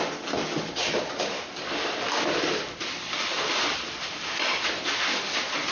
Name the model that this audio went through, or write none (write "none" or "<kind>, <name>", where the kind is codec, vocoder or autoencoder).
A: vocoder, BigVGAN v2